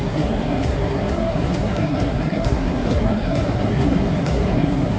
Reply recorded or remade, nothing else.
remade